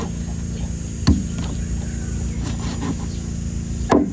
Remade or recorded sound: recorded